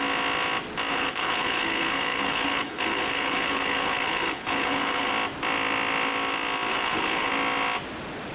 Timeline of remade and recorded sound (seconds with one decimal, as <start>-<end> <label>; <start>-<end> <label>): 0.0-0.9 recorded; 0.9-5.1 remade; 5.1-6.7 recorded; 6.7-7.3 remade; 7.3-8.3 recorded